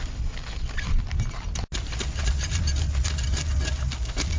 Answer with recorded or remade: recorded